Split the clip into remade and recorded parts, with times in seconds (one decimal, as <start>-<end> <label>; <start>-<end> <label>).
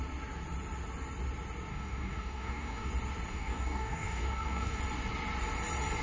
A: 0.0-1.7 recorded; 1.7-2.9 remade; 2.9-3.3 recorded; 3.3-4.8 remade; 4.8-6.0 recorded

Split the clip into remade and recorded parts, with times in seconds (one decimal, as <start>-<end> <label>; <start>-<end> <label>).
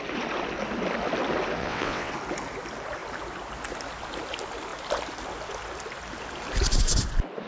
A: 0.0-1.6 recorded; 1.6-2.1 remade; 2.1-7.5 recorded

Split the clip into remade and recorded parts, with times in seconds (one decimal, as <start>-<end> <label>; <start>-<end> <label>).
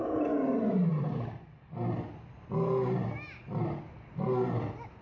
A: 0.0-5.0 recorded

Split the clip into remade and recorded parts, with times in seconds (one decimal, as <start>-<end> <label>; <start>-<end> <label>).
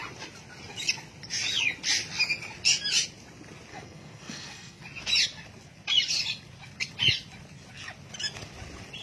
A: 0.0-3.7 recorded; 3.7-4.8 remade; 4.8-9.0 recorded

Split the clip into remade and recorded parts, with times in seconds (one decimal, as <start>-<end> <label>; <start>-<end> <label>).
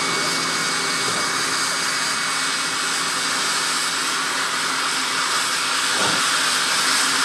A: 0.0-7.2 recorded